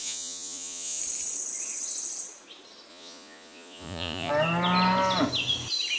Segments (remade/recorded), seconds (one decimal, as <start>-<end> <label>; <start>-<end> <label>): 0.0-1.0 remade; 1.0-2.9 recorded; 2.9-4.3 remade; 4.3-6.0 recorded

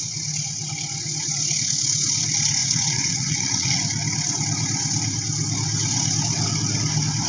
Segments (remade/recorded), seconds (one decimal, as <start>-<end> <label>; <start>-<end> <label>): 0.0-2.6 recorded; 2.6-3.8 remade; 3.8-7.3 recorded

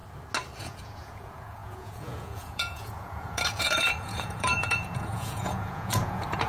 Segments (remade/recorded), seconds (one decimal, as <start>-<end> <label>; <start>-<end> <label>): 0.0-0.6 recorded; 0.6-6.5 remade

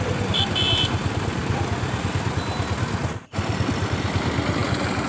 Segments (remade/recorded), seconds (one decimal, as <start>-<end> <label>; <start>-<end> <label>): 0.0-5.1 recorded

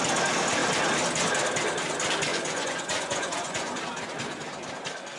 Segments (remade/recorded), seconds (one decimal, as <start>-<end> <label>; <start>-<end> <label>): 0.0-2.3 recorded; 2.3-3.8 remade; 3.8-5.2 recorded

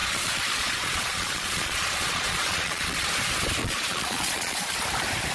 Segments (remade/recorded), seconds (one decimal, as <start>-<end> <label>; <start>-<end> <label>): 0.0-3.1 remade; 3.1-3.6 recorded; 3.6-4.7 remade; 4.7-5.3 recorded

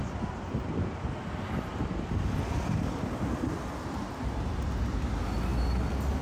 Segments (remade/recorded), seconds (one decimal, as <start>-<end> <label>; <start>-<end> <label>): 0.0-6.2 recorded